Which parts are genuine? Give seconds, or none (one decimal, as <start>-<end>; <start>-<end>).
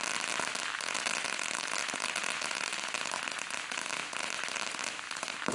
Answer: 0.0-5.5